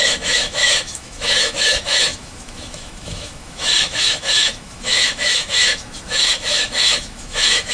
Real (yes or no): no